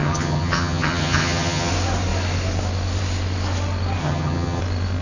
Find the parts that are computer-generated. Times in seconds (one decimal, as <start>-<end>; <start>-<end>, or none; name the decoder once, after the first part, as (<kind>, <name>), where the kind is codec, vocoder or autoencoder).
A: 0.0-1.7 (vocoder, HiFi-GAN); 4.0-4.6